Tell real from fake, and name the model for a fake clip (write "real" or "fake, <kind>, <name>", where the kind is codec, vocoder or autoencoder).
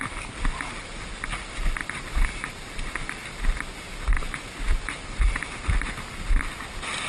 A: real